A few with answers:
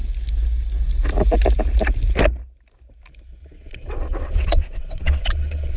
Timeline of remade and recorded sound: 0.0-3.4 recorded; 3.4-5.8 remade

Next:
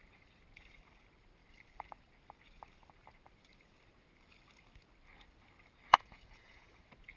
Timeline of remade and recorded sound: 0.0-5.9 recorded; 5.9-6.8 remade; 6.8-7.2 recorded

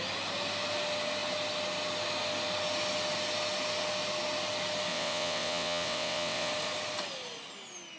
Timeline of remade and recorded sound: 0.0-4.9 recorded; 4.9-6.5 remade; 6.5-8.0 recorded

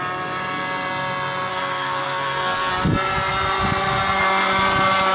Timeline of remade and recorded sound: 0.0-1.5 recorded; 1.5-2.7 remade; 2.7-5.1 recorded

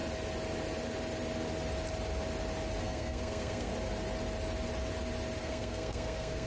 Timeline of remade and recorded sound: 0.0-2.8 recorded; 2.8-3.7 remade; 3.7-5.4 recorded; 5.4-6.5 remade